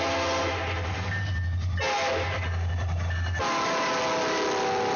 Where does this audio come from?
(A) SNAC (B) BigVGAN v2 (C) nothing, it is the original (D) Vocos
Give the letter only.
C